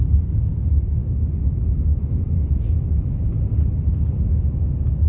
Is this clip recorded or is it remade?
recorded